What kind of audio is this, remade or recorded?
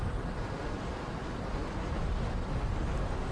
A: recorded